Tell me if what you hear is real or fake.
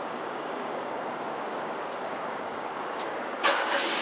fake